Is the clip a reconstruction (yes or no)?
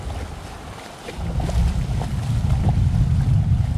no